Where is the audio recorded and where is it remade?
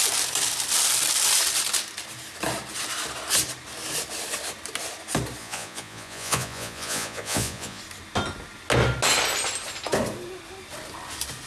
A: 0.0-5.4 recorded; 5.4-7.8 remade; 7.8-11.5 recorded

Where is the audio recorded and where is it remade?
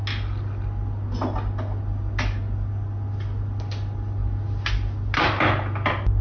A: 0.0-6.2 recorded